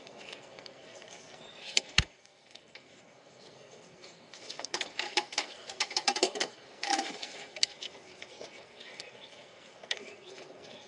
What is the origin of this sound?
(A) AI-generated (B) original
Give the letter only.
A